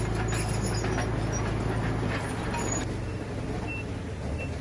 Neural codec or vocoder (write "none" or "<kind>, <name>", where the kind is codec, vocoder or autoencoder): none